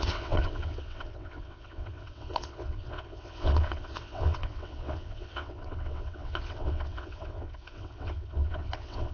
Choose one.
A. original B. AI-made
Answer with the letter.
B